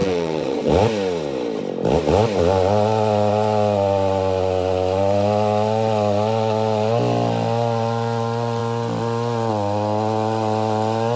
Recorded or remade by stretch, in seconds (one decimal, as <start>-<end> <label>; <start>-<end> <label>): 0.0-0.7 remade; 0.7-11.2 recorded